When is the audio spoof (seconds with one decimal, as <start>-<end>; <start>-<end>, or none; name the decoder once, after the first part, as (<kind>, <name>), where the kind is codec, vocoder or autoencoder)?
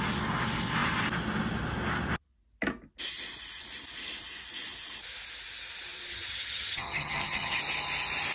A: 6.1-7.6 (vocoder, HiFi-GAN)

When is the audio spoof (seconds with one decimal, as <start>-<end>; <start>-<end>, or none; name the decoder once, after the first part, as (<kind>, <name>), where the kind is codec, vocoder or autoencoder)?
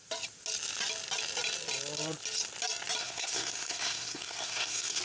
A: 3.0-5.0 (codec, SNAC)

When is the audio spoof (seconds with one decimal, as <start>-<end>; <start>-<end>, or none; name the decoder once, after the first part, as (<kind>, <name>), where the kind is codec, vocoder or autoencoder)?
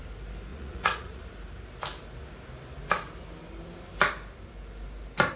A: 0.5-1.2 (vocoder, Vocos)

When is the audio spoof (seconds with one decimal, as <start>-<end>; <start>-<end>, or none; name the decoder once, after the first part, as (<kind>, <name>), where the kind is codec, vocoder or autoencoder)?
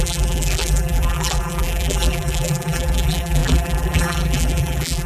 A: 0.0-5.1 (vocoder, BigVGAN v2)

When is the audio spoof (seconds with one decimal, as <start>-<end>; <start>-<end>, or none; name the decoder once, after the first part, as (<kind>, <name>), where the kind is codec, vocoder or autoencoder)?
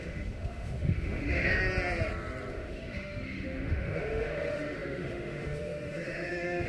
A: 0.0-1.6 (autoencoder, DAC-VAE); 2.5-6.7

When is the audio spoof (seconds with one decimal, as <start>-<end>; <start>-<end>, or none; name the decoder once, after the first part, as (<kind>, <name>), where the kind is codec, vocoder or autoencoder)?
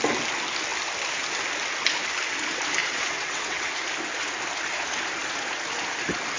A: 2.8-3.7 (vocoder, WaveNeXt)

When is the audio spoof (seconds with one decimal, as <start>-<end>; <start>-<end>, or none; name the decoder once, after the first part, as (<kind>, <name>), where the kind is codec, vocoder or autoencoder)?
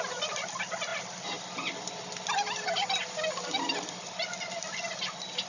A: 0.0-5.5 (vocoder, BigVGAN v2)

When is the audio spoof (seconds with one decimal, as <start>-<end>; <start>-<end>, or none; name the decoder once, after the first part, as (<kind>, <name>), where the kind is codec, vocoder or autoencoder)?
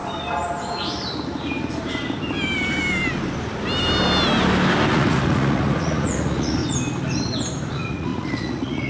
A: 4.9-6.6 (vocoder, Vocos); 7.7-8.9